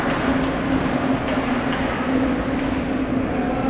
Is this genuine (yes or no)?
yes